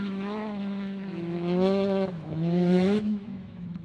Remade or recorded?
remade